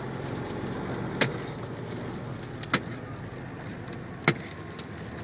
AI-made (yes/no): no